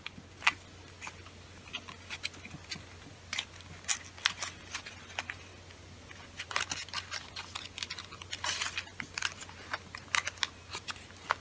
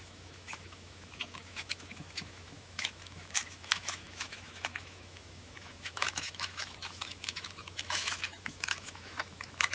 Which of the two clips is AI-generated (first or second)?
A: second